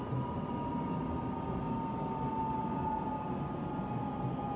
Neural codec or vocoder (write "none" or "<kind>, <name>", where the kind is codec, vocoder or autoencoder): none